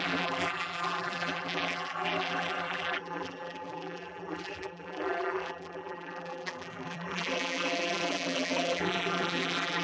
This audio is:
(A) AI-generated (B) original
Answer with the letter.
A